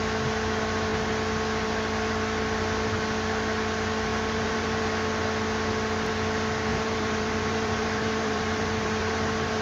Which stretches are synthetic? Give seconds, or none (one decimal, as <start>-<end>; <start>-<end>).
4.1-4.8; 6.7-9.6